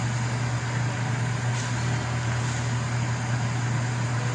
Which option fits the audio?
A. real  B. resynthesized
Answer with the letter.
A